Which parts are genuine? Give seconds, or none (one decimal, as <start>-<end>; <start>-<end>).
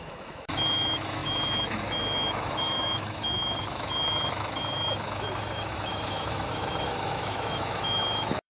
none